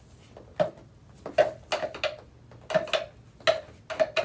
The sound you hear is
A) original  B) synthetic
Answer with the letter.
A